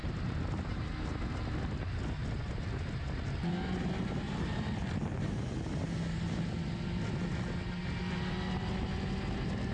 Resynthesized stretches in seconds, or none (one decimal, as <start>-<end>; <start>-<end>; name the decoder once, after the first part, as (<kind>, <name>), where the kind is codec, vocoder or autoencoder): none